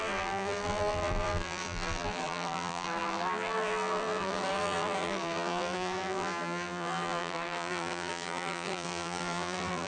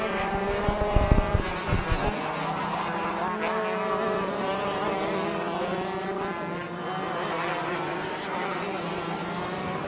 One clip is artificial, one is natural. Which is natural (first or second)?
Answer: second